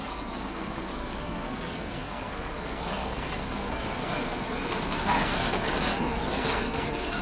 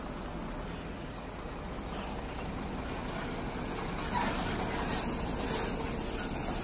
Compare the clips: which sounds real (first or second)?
second